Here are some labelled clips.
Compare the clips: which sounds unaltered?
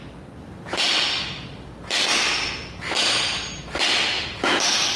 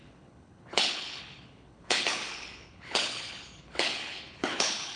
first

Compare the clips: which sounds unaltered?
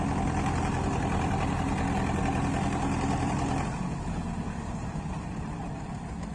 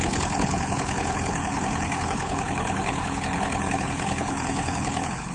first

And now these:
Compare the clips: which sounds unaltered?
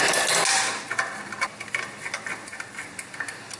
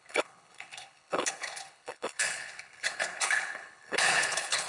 first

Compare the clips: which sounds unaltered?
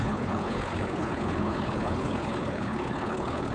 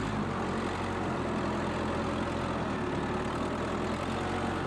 second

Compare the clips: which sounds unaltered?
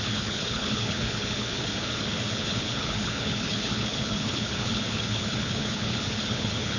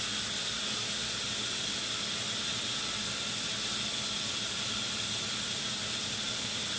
second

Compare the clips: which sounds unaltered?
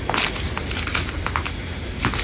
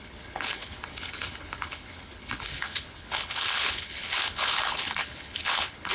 first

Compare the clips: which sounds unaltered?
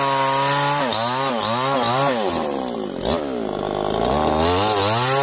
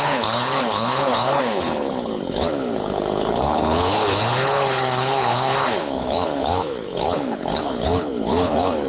first